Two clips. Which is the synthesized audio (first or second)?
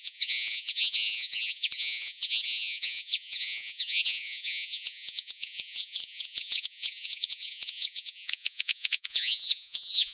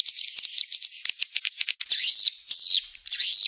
first